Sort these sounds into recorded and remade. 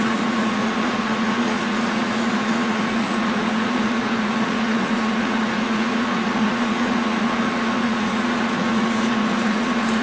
remade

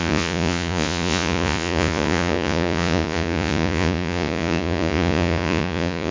remade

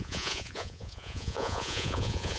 remade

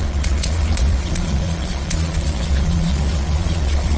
remade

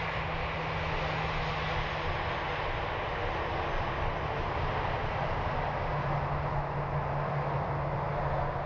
recorded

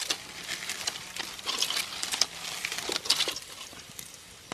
recorded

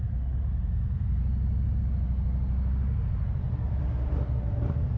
recorded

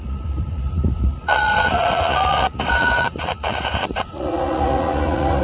remade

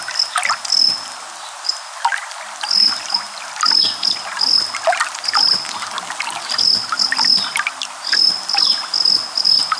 recorded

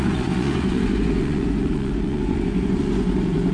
remade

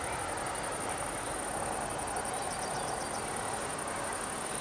recorded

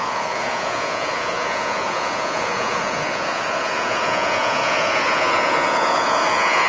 remade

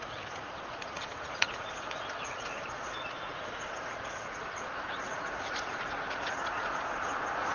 remade